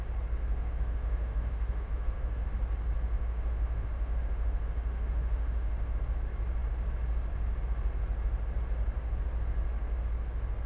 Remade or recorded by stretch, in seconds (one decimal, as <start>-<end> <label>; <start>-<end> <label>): 0.0-0.4 recorded; 0.4-2.5 remade; 2.5-3.2 recorded; 3.2-6.0 remade; 6.0-10.7 recorded